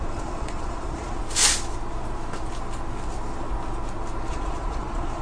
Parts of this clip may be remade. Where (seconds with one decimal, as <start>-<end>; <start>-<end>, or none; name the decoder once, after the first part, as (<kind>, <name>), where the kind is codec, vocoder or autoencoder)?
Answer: 0.0-1.2 (vocoder, Vocos); 4.3-5.2